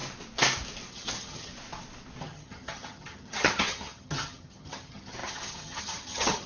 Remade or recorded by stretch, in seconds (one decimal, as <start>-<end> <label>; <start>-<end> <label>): 0.0-0.9 recorded; 0.9-1.5 remade; 1.5-2.2 recorded; 2.2-6.5 remade